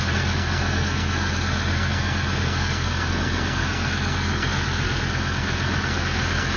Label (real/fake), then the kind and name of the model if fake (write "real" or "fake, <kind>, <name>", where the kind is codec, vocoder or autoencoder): fake, codec, SNAC